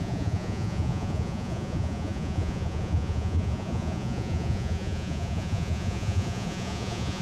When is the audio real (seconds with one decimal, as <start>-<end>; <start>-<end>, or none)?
none